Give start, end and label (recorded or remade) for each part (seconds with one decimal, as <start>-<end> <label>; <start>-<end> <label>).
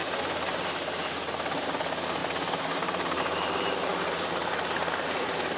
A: 0.0-0.7 remade; 0.7-2.2 recorded; 2.2-3.2 remade; 3.2-5.6 recorded